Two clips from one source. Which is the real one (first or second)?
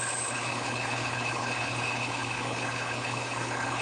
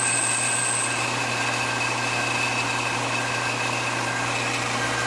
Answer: second